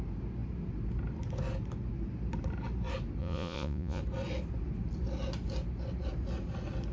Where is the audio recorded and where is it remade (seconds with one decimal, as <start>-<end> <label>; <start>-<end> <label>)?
0.0-3.2 recorded; 3.2-4.0 remade; 4.0-6.9 recorded

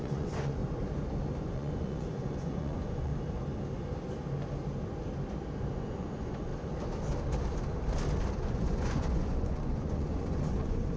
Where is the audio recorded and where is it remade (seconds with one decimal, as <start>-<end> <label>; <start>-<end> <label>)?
0.0-0.6 remade; 0.6-1.4 recorded; 1.4-3.1 remade; 3.1-5.7 recorded; 5.7-6.5 remade; 6.5-8.3 recorded; 8.3-11.0 remade